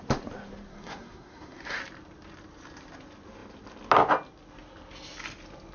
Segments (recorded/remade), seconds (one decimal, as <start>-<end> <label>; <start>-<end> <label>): 0.0-0.7 recorded; 0.7-1.8 remade; 1.8-5.7 recorded